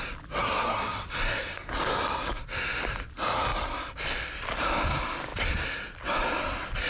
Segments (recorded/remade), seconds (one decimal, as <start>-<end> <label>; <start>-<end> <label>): 0.0-0.4 recorded; 0.4-1.7 remade; 1.7-6.9 recorded